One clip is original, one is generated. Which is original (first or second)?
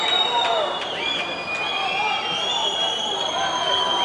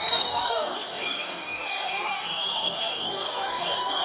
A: first